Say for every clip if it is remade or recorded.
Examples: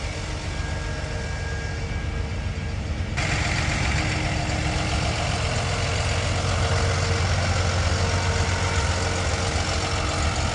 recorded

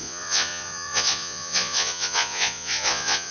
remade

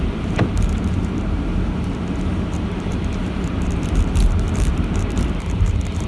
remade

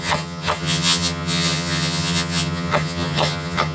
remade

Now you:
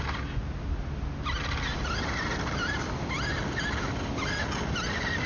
recorded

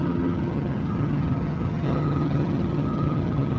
remade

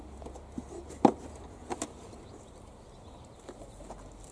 recorded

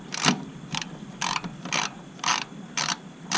remade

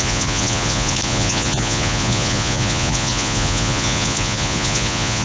remade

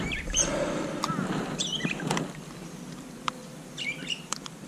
remade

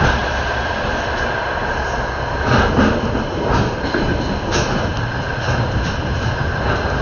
recorded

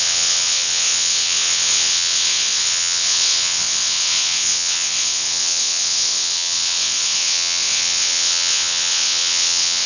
remade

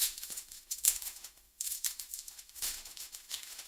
remade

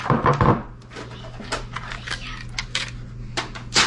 recorded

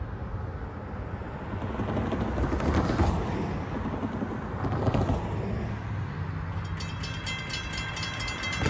recorded